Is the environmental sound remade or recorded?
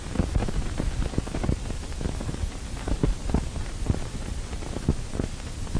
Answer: recorded